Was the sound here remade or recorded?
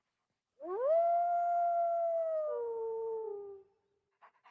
recorded